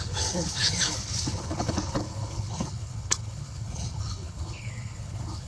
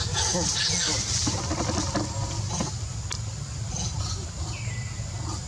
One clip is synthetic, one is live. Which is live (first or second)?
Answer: second